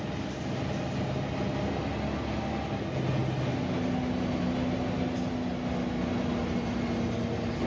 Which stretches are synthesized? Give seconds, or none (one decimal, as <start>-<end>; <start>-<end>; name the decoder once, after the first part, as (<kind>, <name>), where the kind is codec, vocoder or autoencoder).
none